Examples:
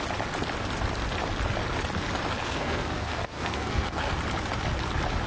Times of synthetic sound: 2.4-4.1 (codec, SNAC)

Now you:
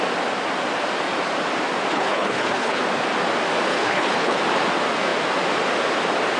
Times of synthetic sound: 1.9-2.8 (codec, HILCodec); 3.7-4.4